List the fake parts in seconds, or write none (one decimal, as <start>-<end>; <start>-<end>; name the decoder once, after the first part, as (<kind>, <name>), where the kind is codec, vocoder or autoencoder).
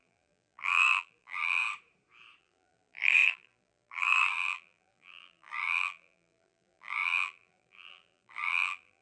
0.0-1.6 (vocoder, BigVGAN v2); 2.4-9.0